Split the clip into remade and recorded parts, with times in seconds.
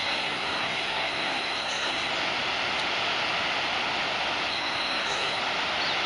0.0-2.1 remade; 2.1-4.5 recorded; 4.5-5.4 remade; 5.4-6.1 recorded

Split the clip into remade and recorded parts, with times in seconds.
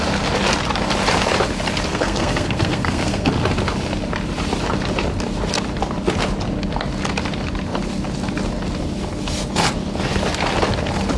0.0-1.9 recorded; 1.9-3.3 remade; 3.3-11.2 recorded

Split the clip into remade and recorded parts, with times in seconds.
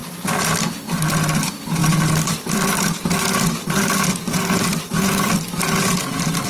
0.0-6.5 recorded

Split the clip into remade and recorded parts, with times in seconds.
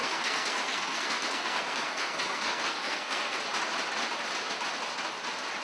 0.0-3.4 remade; 3.4-5.6 recorded